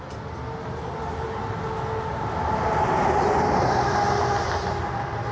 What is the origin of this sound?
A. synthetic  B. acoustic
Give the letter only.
B